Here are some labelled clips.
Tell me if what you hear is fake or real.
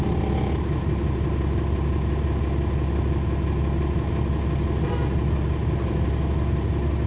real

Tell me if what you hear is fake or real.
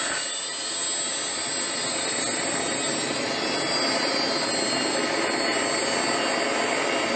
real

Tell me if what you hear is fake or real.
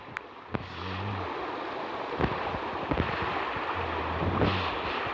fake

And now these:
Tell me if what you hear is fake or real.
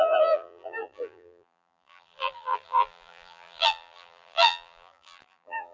fake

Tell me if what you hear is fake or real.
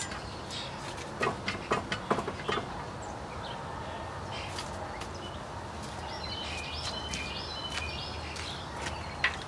real